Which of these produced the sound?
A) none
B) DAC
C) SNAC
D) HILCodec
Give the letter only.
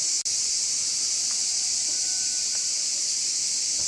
A